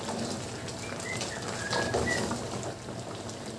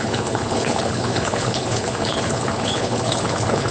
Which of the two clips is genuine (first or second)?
first